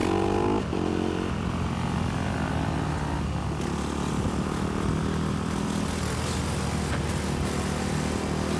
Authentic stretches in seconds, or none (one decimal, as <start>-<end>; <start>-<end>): 0.0-8.6